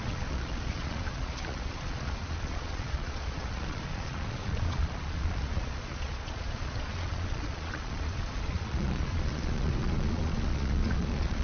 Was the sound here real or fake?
fake